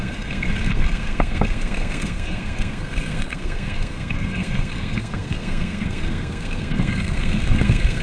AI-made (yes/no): yes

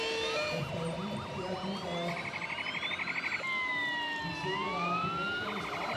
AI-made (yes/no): no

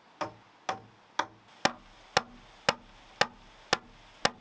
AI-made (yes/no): no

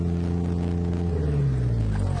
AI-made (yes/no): no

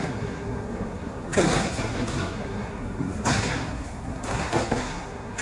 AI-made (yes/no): yes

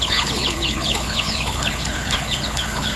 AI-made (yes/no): yes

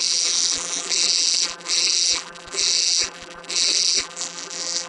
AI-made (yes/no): yes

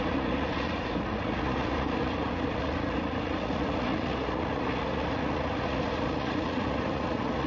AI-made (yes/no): yes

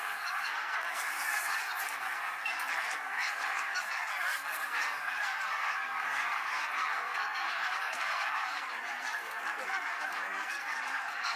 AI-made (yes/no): yes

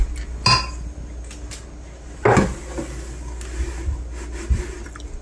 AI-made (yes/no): no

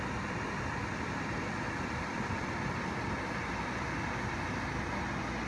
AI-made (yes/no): no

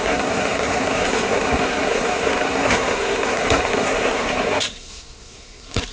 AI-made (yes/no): yes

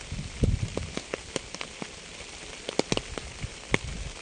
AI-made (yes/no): no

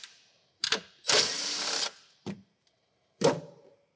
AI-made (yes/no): yes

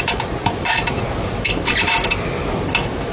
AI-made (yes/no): no